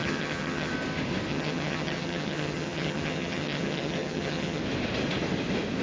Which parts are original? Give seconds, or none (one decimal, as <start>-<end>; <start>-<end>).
0.7-1.3; 4.6-5.8